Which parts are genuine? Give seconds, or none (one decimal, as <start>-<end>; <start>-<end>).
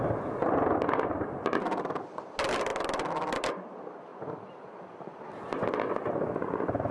0.0-4.1; 5.2-6.9